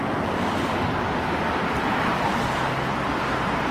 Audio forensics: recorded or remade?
recorded